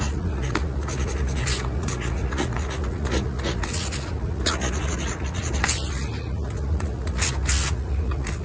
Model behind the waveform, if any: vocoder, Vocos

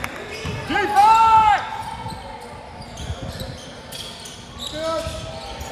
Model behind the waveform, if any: none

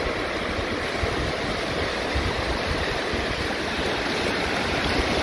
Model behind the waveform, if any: none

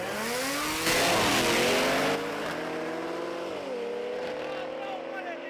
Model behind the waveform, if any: none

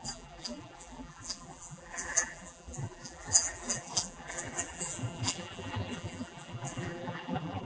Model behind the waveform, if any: vocoder, BigVGAN v2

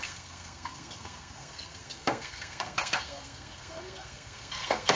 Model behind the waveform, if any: codec, SNAC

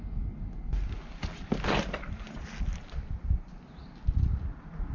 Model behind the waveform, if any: none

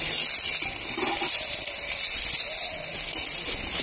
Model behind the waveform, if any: none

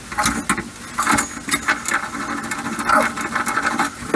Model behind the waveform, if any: none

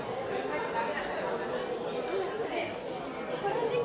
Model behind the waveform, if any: none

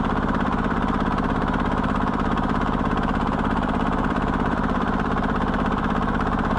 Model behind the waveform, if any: vocoder, BigVGAN v2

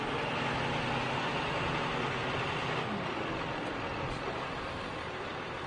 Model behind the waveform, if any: none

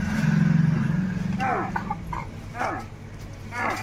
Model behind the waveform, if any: none